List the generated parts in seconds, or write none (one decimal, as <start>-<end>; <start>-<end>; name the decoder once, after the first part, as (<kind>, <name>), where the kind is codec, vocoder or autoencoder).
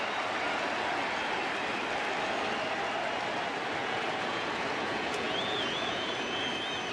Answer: 3.8-6.4 (vocoder, Vocos)